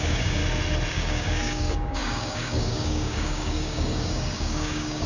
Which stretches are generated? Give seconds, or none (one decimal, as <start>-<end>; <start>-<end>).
0.0-0.4; 0.9-5.1